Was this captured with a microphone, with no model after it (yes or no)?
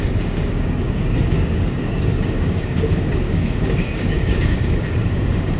no